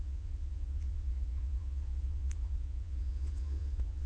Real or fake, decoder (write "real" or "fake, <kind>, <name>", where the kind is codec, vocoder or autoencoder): fake, vocoder, Vocos